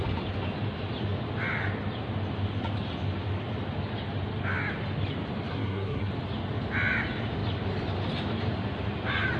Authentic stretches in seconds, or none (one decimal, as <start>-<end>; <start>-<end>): 0.0-5.5; 6.1-9.4

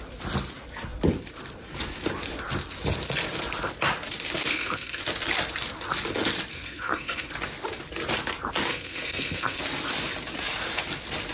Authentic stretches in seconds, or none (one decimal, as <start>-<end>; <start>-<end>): 0.0-4.5; 5.0-6.5; 7.3-8.7; 9.6-11.3

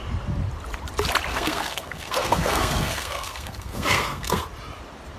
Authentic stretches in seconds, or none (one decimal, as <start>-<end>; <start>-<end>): 0.0-1.3; 4.4-5.2

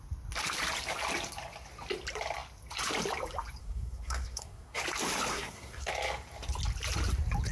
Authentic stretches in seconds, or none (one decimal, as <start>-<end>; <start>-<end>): 0.0-3.6; 4.8-5.3; 5.9-7.5

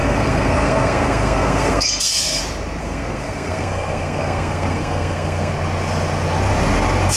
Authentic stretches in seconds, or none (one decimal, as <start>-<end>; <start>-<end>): 2.4-2.8; 5.5-7.2

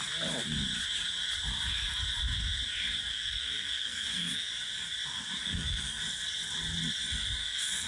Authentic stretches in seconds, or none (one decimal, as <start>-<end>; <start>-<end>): 0.0-3.1; 4.5-5.4; 6.0-7.4